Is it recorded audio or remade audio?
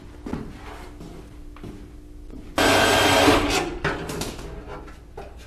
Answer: recorded